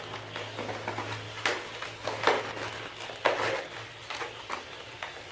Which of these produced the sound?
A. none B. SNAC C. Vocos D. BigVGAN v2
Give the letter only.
A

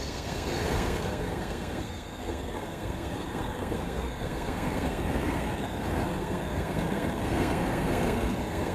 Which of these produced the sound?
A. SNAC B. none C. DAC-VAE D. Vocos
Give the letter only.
A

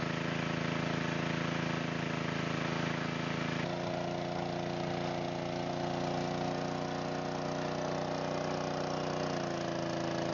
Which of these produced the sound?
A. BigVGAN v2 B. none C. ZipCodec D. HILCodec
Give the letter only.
B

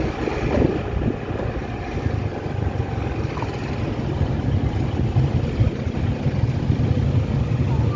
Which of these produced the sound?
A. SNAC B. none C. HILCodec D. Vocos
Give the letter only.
B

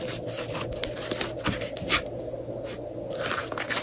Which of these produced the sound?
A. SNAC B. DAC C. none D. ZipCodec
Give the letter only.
C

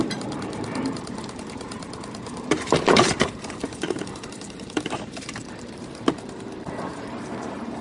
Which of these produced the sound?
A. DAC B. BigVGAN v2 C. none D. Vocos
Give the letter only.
B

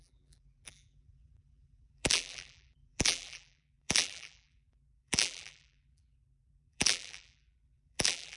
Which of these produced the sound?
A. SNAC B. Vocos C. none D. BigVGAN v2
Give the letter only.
D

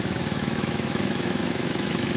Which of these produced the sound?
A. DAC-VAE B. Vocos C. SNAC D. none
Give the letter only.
A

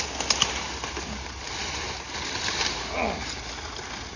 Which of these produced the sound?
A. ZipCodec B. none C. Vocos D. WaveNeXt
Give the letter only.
B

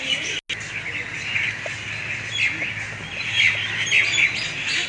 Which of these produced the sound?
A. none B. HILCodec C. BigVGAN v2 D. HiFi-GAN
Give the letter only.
A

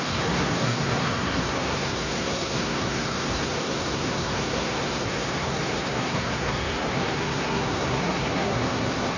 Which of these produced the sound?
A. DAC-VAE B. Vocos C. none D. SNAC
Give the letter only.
D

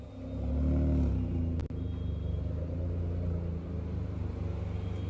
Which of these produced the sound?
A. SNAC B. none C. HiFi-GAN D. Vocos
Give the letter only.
B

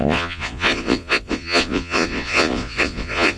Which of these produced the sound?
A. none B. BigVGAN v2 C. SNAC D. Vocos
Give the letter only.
D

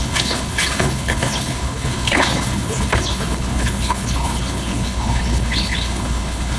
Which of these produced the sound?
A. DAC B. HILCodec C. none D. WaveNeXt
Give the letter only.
B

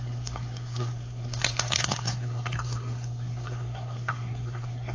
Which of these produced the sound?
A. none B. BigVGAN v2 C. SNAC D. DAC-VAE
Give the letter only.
C